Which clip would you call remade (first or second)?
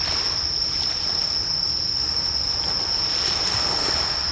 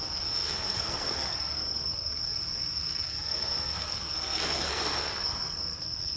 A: second